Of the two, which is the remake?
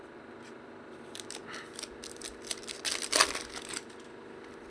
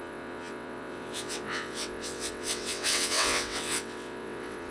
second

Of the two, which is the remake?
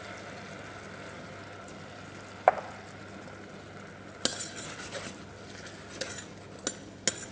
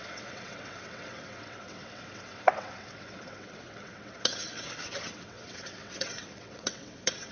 second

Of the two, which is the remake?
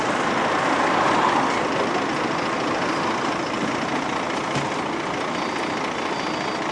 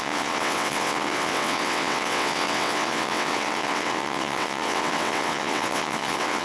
second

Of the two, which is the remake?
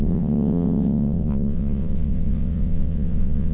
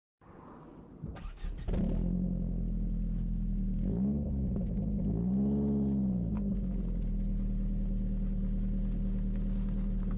first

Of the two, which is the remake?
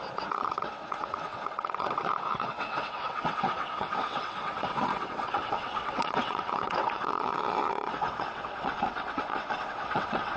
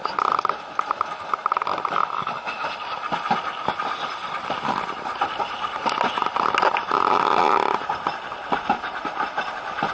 first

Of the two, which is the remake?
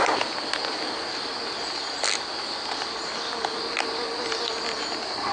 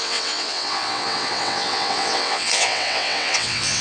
second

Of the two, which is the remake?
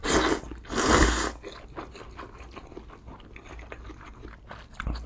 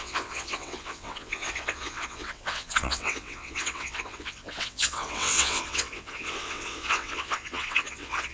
second